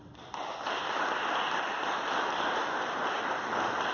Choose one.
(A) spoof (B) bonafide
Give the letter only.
B